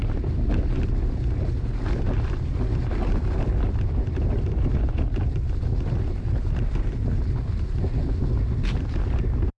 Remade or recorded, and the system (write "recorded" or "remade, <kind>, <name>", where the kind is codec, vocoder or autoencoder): recorded